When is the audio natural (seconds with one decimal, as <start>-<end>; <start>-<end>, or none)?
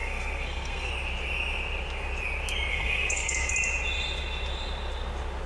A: 0.9-2.7; 3.5-5.5